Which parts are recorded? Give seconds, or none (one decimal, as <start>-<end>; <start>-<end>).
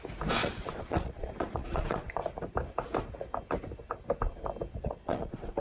0.0-0.4; 2.2-4.8